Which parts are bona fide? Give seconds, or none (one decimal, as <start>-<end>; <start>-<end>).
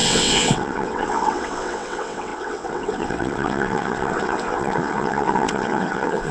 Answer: none